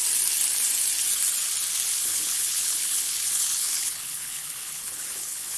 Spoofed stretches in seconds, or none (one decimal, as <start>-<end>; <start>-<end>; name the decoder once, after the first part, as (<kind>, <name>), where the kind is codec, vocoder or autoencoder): 1.9-5.6 (codec, HILCodec)